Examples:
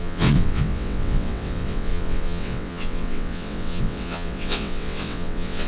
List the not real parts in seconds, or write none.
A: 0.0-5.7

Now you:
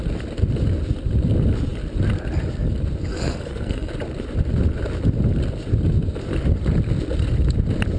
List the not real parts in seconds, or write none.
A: 3.1-3.9

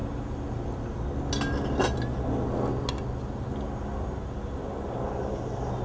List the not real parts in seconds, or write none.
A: none